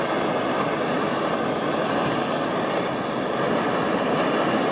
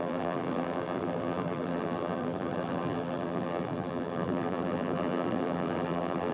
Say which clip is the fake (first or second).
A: second